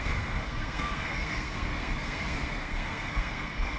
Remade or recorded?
remade